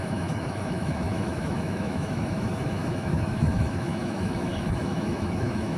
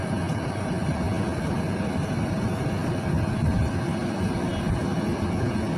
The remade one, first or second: first